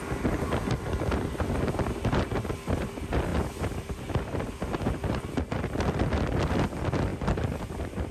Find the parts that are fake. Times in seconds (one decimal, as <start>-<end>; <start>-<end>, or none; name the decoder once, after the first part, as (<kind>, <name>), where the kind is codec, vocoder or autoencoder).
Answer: none